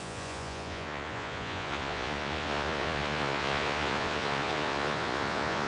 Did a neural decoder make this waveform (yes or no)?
yes